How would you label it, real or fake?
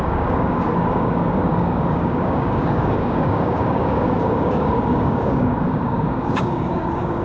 fake